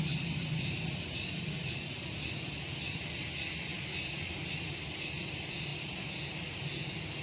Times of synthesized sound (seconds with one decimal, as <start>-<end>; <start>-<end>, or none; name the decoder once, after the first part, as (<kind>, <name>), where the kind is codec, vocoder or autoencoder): none